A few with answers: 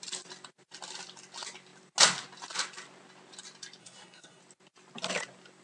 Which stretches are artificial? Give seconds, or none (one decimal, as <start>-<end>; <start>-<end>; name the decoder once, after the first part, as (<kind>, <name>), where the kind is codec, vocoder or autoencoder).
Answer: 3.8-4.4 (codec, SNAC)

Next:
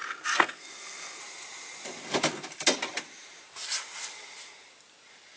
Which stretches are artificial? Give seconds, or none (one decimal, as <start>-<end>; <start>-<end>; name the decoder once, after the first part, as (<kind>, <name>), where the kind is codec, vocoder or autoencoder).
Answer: 0.0-1.2 (codec, SNAC)

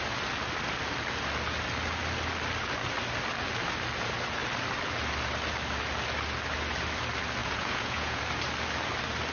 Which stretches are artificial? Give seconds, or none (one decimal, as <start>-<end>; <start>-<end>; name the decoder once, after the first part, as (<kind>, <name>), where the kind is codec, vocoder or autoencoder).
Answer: 7.4-8.2 (vocoder, Vocos)

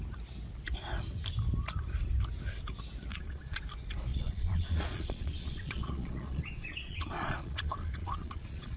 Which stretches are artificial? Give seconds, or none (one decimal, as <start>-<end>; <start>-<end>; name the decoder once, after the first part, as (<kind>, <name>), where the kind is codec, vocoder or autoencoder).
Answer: 3.1-3.6 (vocoder, Vocos); 4.1-8.8

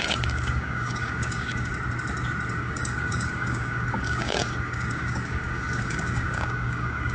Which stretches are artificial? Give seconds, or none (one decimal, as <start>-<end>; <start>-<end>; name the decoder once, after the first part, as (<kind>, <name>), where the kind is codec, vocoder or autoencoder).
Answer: 0.0-1.7 (codec, DAC); 2.5-7.1

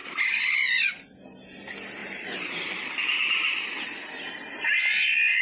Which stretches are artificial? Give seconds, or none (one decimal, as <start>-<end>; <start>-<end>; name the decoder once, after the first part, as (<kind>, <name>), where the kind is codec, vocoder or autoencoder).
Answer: 0.0-0.8 (vocoder, BigVGAN v2); 2.0-4.1